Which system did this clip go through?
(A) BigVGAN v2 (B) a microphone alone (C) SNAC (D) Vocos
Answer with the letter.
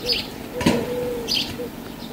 B